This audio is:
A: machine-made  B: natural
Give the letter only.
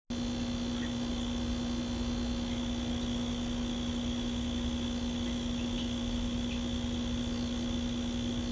B